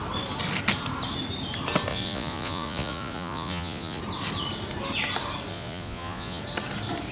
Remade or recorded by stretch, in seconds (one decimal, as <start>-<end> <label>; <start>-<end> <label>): 0.0-1.9 recorded; 1.9-4.0 remade; 4.0-5.5 recorded; 5.5-6.4 remade; 6.4-7.1 recorded

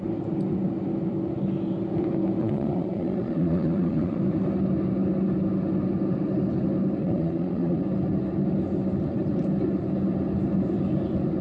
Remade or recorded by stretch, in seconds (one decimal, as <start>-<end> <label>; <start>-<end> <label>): 0.0-2.4 recorded; 2.4-4.2 remade; 4.2-7.0 recorded; 7.0-7.8 remade; 7.8-11.4 recorded